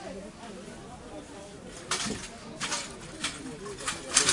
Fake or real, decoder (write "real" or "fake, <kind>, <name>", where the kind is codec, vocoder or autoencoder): real